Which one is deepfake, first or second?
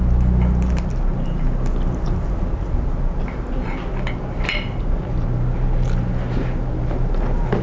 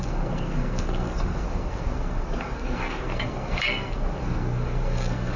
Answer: second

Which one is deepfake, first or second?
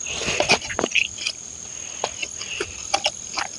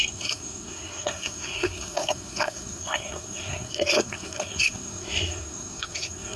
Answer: second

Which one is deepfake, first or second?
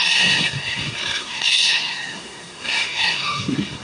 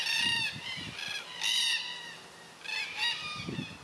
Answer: first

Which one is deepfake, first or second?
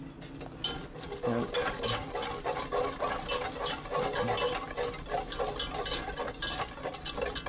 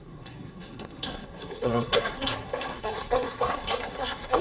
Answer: second